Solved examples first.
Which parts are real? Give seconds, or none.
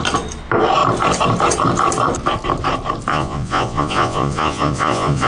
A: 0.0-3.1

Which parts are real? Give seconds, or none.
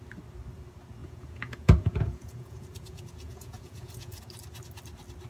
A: 0.0-1.0; 4.2-5.3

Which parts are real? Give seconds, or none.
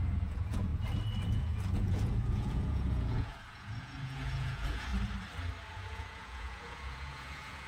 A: 0.7-1.3; 4.9-5.7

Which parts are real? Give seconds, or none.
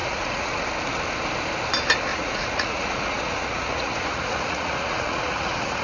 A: 0.6-2.1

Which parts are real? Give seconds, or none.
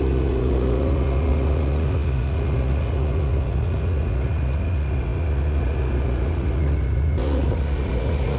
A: none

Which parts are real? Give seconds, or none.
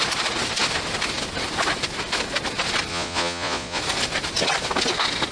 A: 0.0-2.9; 3.8-5.3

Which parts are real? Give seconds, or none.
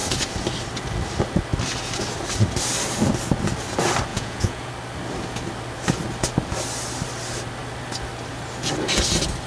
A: 0.0-4.1; 4.7-9.5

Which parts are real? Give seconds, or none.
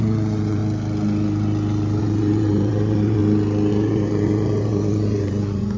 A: 0.6-2.0; 3.2-3.7